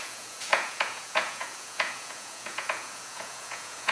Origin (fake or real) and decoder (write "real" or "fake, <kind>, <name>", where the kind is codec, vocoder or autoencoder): fake, vocoder, Vocos